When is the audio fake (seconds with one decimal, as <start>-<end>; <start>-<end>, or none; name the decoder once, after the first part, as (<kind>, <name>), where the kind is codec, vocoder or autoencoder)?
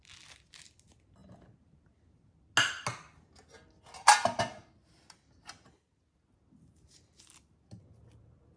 none